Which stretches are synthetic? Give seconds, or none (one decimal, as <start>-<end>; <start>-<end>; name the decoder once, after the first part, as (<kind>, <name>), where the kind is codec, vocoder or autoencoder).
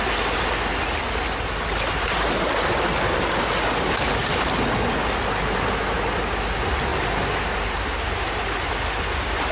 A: 6.9-8.7 (vocoder, BigVGAN v2)